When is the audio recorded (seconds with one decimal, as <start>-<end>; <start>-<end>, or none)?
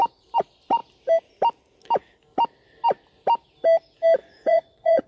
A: 0.0-4.2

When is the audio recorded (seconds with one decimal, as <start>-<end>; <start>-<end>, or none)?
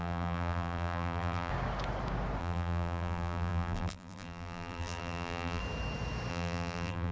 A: 1.5-2.4; 5.6-6.3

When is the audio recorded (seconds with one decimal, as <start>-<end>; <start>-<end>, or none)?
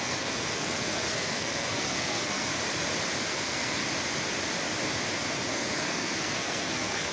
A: 2.5-3.2; 3.8-5.5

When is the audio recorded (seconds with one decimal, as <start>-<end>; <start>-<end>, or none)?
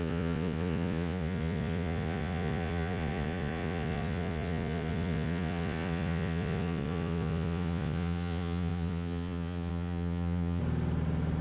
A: 10.6-11.4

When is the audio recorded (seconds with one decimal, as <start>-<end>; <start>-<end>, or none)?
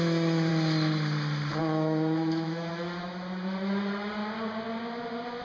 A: 0.5-1.6; 4.2-5.4